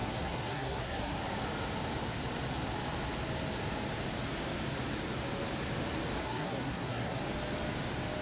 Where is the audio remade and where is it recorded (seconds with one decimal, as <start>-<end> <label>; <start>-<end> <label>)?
0.0-1.2 remade; 1.2-6.2 recorded; 6.2-7.2 remade; 7.2-8.2 recorded